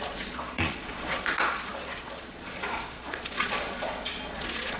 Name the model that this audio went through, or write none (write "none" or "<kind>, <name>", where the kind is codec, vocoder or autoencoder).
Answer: vocoder, Vocos